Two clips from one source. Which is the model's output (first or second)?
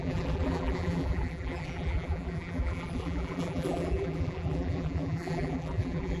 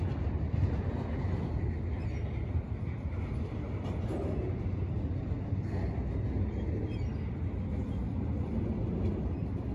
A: first